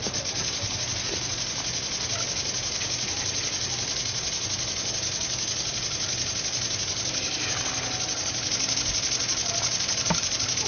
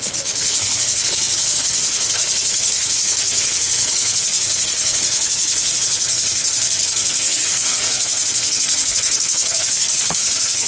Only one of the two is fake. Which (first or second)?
second